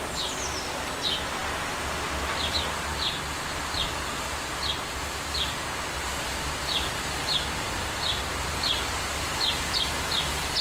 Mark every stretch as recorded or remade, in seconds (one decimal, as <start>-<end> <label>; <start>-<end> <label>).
0.0-10.6 recorded